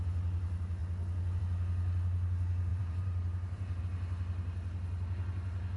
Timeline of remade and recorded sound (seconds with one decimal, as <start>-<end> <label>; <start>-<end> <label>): 0.0-2.7 recorded; 2.7-3.8 remade; 3.8-5.8 recorded